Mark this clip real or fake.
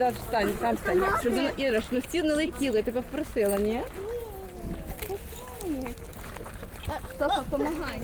real